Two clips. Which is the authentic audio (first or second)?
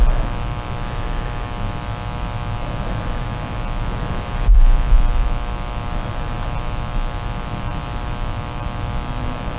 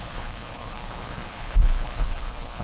first